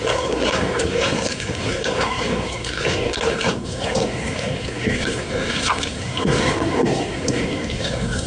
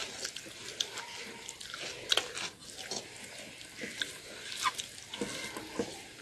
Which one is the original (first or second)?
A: second